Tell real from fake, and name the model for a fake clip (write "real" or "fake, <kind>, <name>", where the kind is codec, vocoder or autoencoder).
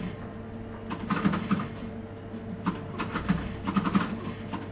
real